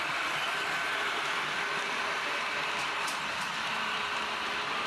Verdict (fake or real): real